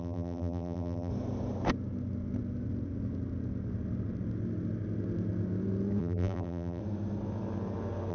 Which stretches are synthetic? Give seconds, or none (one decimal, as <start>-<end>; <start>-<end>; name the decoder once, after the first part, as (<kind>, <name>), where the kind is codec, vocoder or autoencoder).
0.0-1.1 (vocoder, BigVGAN v2); 6.0-6.8